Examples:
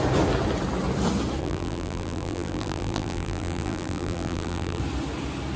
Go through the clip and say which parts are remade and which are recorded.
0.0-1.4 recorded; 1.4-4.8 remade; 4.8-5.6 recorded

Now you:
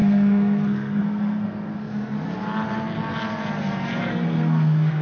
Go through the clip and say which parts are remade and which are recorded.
0.0-1.9 remade; 1.9-4.0 recorded; 4.0-5.0 remade

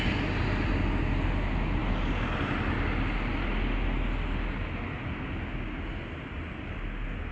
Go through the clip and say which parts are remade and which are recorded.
0.0-7.3 recorded